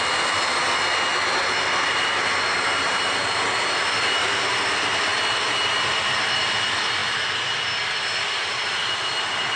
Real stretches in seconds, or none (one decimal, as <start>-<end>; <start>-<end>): 0.0-9.6